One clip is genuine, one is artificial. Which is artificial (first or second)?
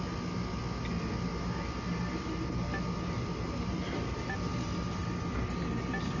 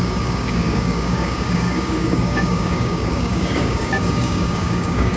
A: second